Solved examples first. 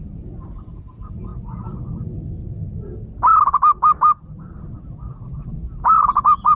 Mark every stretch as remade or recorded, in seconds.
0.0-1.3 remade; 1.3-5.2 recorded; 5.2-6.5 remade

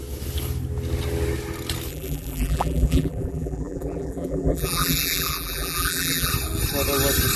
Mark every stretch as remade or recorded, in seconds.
0.0-1.9 recorded; 1.9-6.3 remade; 6.3-7.4 recorded

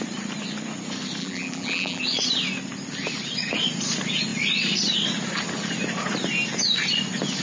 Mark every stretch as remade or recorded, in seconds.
0.0-1.2 recorded; 1.2-2.0 remade; 2.0-7.4 recorded

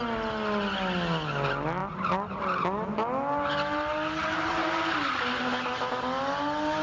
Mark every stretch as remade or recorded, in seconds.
0.0-6.8 recorded